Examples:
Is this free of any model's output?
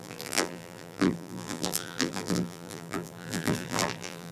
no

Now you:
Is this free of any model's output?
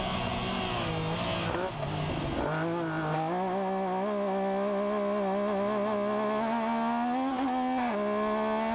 yes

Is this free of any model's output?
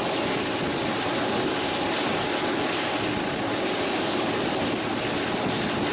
yes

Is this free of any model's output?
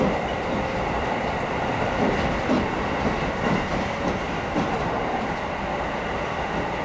no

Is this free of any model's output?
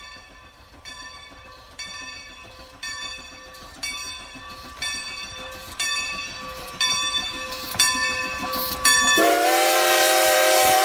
no